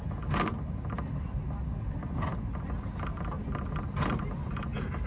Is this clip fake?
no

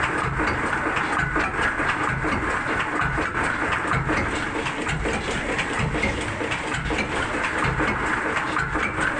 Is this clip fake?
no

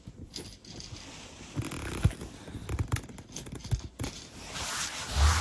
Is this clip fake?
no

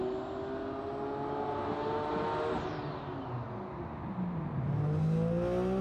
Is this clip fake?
no